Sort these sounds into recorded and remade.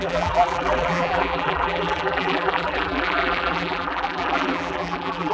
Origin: remade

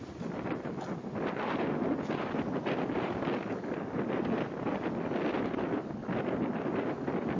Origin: recorded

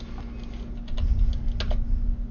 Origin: recorded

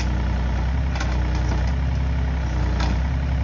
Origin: recorded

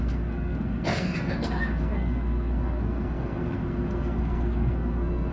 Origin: remade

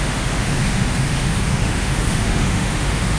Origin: remade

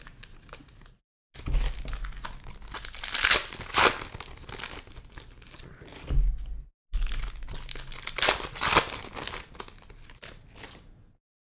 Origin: recorded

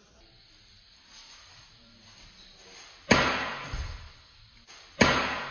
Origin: recorded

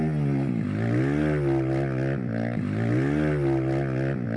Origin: recorded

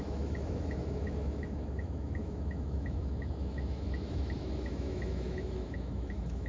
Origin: remade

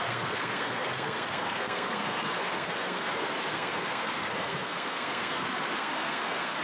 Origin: remade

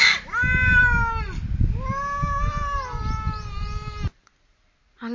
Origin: recorded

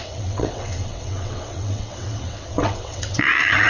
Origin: remade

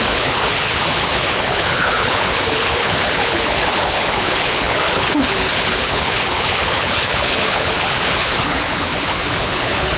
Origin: remade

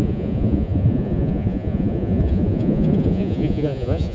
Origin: remade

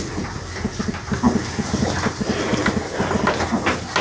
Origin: recorded